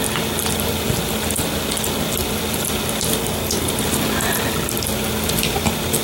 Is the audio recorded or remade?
recorded